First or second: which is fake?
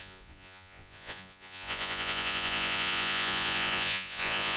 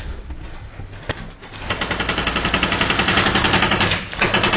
first